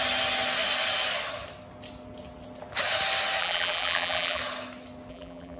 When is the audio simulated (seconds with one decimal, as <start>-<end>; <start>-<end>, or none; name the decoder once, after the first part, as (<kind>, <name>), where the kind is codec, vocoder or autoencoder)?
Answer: 3.4-4.4 (vocoder, BigVGAN v2); 5.1-5.6

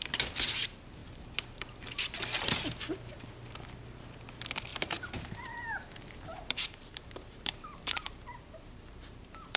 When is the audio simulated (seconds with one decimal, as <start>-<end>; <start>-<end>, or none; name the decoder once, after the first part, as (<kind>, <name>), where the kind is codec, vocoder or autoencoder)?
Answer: 4.7-9.6 (vocoder, BigVGAN v2)